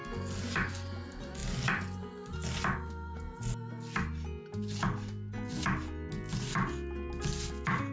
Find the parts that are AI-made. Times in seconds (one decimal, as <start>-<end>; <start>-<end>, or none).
none